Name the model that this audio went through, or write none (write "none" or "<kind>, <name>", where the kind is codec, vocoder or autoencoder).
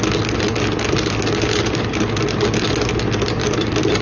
none